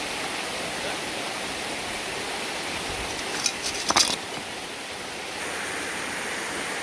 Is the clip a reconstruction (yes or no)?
no